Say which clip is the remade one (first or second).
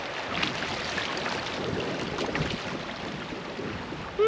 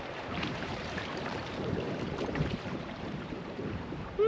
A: second